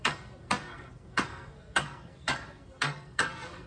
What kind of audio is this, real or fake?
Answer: fake